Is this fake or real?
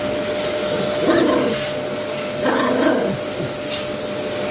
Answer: real